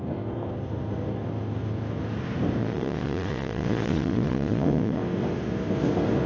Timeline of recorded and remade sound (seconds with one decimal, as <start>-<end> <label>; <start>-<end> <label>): 0.0-2.6 recorded; 2.6-5.0 remade; 5.0-6.3 recorded